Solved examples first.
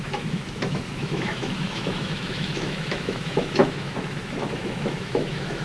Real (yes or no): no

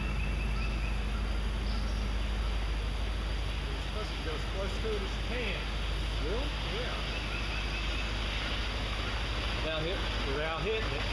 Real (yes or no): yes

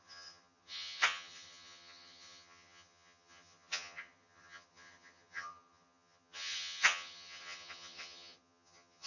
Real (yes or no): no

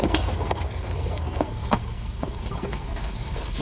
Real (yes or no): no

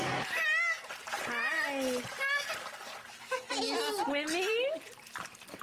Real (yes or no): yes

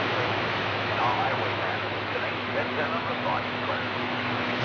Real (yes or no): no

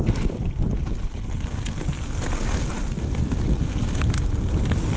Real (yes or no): yes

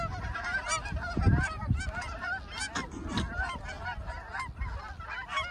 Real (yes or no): yes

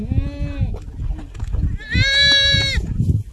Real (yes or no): yes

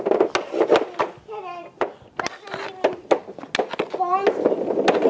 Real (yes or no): yes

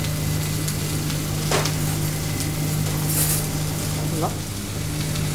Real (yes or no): yes